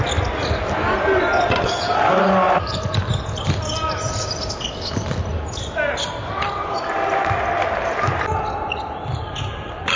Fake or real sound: real